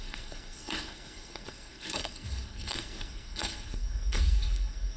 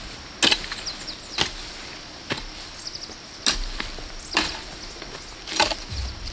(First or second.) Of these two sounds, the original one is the second